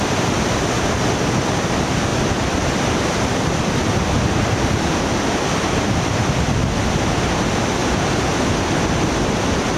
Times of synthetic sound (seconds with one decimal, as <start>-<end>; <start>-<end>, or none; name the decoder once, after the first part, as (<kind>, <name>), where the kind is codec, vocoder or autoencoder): 2.1-5.3 (vocoder, BigVGAN v2); 7.8-8.5